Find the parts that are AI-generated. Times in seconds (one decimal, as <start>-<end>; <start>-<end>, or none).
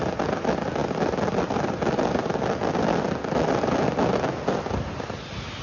none